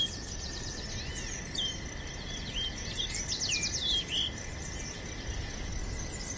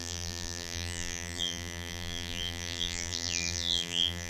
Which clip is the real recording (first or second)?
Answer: first